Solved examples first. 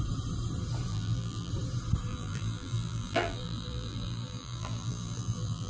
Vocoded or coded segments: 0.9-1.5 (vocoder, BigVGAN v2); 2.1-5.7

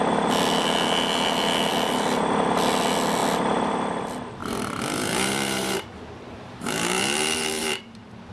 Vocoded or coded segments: 4.4-8.3 (vocoder, BigVGAN v2)

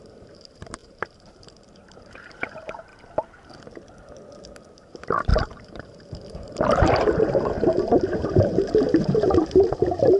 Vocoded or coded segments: 0.0-2.9 (vocoder, BigVGAN v2); 4.7-10.2